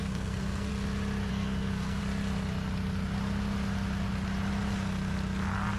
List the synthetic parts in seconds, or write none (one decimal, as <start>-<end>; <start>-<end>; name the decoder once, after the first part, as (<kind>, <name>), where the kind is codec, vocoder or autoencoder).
0.0-0.7 (codec, SNAC); 1.3-2.0